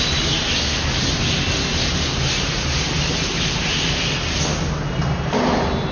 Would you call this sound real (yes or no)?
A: yes